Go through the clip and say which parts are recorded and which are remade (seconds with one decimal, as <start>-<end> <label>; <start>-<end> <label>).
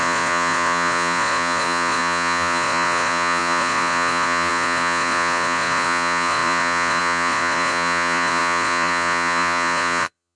0.0-10.4 remade